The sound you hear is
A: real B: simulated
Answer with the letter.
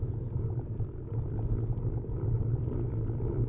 A